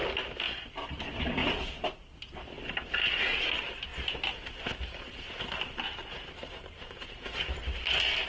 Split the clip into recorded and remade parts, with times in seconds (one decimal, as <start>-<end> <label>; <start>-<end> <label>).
0.0-8.3 recorded